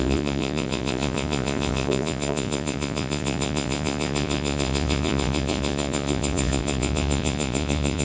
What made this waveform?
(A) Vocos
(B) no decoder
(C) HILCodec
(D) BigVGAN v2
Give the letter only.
A